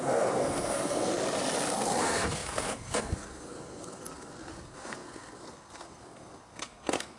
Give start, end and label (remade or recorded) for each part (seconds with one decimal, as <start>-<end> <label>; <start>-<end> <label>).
0.0-1.1 remade; 1.1-2.0 recorded; 2.0-7.2 remade